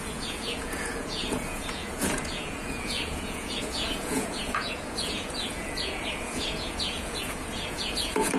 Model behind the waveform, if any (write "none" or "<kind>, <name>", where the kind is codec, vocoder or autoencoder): vocoder, Vocos